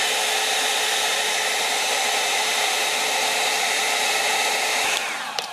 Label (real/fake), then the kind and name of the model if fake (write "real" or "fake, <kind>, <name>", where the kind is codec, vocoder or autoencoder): fake, vocoder, BigVGAN v2